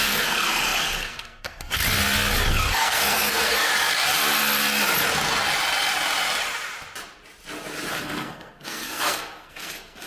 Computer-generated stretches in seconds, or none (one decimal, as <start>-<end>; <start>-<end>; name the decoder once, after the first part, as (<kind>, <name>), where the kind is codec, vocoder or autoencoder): 0.0-1.8 (codec, SNAC); 2.5-3.7; 7.9-10.1